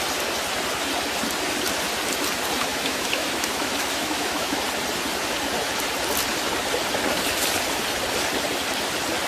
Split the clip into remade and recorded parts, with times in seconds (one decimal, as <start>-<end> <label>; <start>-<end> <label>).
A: 0.0-2.7 recorded; 2.7-4.6 remade; 4.6-9.3 recorded